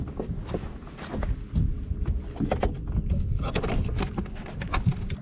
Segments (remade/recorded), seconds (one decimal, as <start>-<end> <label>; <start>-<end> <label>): 0.0-5.2 recorded